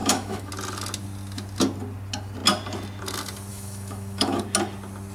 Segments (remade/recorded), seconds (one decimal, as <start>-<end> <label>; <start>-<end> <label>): 0.0-0.5 remade; 0.5-3.5 recorded; 3.5-4.4 remade; 4.4-5.1 recorded